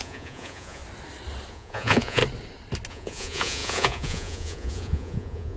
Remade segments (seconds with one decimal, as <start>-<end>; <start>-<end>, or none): 0.0-0.8; 1.5-2.2; 2.9-5.6